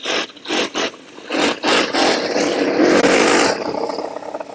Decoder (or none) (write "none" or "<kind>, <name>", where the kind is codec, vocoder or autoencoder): none